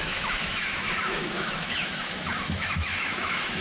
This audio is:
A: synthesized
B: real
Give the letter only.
A